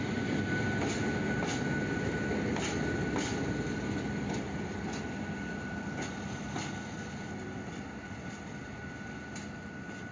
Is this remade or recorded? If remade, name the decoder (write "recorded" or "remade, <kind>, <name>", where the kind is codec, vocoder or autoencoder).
recorded